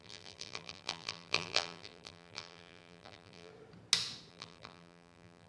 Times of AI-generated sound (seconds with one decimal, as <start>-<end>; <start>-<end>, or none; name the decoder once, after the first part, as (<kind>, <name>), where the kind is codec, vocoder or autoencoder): 0.0-3.5 (vocoder, BigVGAN v2); 4.3-5.5